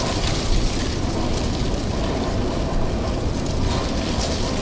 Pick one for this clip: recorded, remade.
recorded